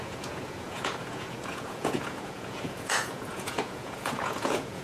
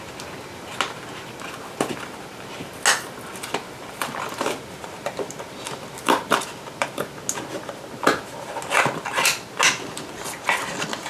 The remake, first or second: first